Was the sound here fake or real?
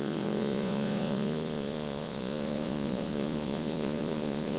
fake